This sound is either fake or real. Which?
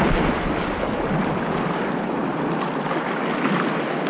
real